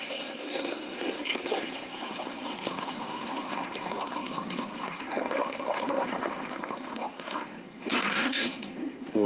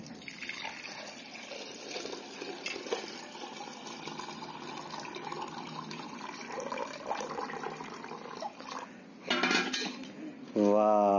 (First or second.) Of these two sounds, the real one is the second